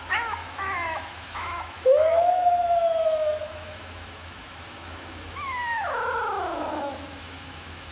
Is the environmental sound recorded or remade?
remade